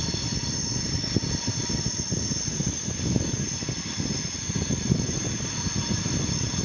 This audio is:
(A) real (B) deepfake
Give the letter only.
A